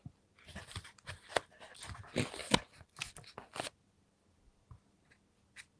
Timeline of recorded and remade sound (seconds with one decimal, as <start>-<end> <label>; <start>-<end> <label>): 0.0-5.8 recorded